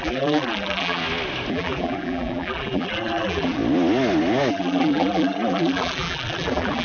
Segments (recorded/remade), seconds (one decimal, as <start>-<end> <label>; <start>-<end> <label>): 0.0-1.0 remade; 1.0-1.5 recorded; 1.5-3.6 remade; 3.6-4.5 recorded; 4.5-6.8 remade